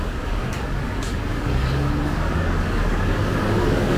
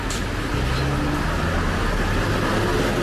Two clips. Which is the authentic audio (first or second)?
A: second